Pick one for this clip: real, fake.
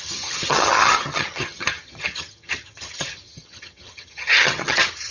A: fake